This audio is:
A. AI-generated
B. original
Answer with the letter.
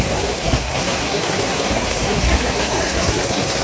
A